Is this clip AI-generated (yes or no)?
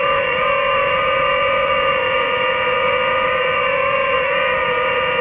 yes